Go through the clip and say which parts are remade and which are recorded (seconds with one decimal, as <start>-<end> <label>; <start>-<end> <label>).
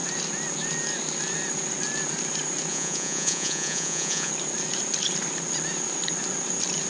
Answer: 0.0-2.7 recorded; 2.7-4.3 remade; 4.3-6.9 recorded